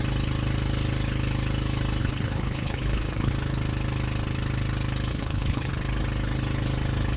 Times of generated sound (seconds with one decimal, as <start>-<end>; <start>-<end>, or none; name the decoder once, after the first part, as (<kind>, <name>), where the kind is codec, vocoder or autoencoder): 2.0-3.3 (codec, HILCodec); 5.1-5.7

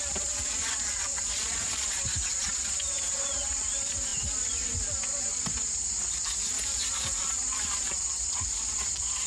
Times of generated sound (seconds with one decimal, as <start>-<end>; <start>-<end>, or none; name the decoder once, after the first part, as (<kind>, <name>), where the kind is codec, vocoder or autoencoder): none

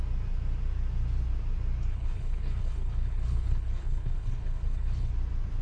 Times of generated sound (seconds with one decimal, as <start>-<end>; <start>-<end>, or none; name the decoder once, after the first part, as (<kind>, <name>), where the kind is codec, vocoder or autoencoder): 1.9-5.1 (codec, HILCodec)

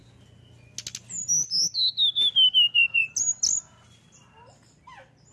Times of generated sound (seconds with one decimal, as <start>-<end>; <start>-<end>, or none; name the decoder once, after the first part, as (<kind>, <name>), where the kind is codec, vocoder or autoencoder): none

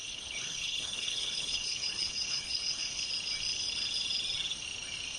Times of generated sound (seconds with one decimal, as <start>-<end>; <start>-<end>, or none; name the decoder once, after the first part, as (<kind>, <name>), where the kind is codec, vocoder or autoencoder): 0.0-3.1 (codec, HILCodec)